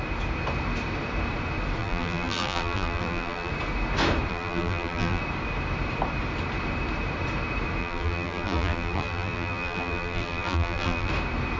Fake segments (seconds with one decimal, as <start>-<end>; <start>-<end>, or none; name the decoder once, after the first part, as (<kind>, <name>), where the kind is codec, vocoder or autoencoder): 1.8-3.5 (vocoder, BigVGAN v2); 4.3-5.2; 7.8-11.1